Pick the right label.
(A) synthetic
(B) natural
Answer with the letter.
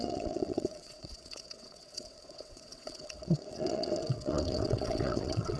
A